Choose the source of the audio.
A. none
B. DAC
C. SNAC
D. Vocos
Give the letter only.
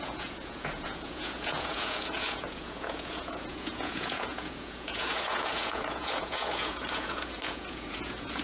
D